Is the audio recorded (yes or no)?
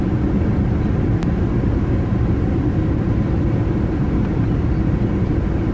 yes